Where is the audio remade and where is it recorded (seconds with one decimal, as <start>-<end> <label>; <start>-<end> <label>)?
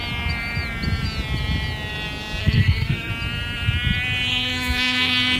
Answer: 0.0-2.4 recorded; 2.4-3.1 remade; 3.1-4.3 recorded; 4.3-5.4 remade